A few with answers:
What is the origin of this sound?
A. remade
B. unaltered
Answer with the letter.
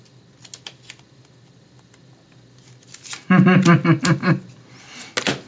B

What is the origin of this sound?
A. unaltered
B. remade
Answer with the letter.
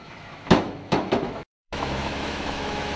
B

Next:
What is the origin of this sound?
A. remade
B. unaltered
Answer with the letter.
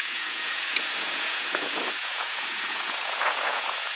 A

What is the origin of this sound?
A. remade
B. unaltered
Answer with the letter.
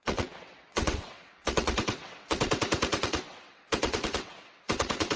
A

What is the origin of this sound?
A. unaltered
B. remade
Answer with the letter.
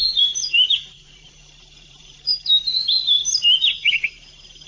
B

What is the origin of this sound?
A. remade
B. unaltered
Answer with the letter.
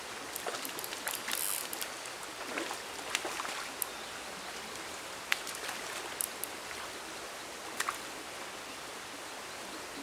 B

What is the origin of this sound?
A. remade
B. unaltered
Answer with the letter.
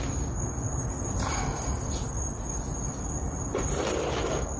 B